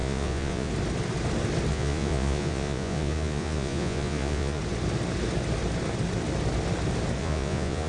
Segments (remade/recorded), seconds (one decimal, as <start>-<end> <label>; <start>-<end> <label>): 0.0-0.7 remade; 0.7-1.7 recorded; 1.7-4.6 remade; 4.6-7.2 recorded; 7.2-7.9 remade